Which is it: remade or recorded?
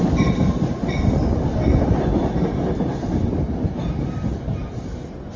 recorded